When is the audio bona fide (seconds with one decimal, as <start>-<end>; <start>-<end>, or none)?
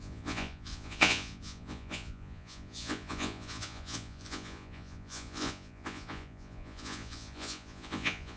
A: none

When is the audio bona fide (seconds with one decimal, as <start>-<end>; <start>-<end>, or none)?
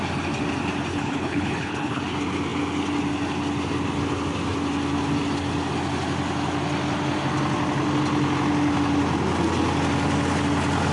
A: 0.0-0.9; 2.0-10.9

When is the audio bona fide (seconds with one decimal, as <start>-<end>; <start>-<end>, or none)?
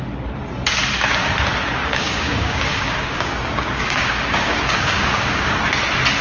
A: 0.0-1.8; 5.5-6.2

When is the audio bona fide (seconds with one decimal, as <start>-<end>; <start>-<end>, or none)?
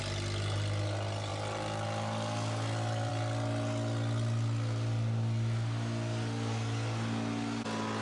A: 0.0-8.0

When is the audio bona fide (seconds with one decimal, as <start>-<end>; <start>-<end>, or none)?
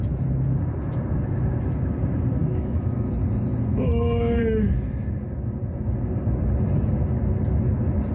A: 0.0-2.4; 3.1-3.7; 4.4-8.1